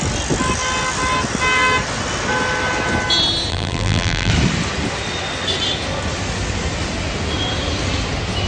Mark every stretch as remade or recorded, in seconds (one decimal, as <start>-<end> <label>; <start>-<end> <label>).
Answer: 0.0-3.5 recorded; 3.5-4.3 remade; 4.3-8.5 recorded